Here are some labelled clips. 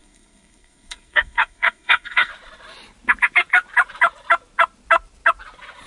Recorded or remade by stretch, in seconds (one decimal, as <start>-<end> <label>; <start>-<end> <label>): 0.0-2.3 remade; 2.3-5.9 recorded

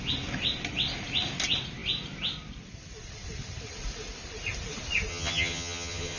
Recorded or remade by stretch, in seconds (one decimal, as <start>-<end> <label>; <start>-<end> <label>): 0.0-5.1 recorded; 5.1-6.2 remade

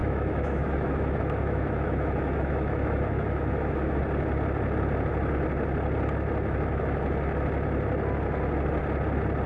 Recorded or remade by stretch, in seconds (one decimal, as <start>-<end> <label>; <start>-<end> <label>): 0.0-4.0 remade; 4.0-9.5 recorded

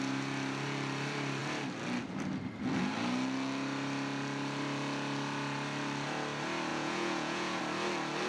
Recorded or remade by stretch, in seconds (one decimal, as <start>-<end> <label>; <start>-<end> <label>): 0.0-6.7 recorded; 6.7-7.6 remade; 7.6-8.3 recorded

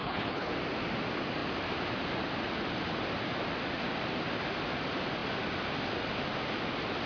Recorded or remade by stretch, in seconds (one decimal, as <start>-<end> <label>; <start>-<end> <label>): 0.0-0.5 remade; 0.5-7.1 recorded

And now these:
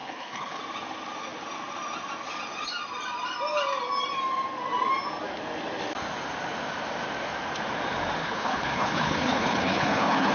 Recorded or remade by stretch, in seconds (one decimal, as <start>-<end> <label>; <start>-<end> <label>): 0.0-0.6 remade; 0.6-8.2 recorded; 8.2-10.3 remade

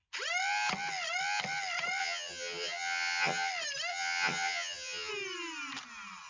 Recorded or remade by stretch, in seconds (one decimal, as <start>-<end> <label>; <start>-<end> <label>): 0.0-2.0 recorded; 2.0-3.5 remade; 3.5-3.9 recorded; 3.9-5.1 remade; 5.1-6.3 recorded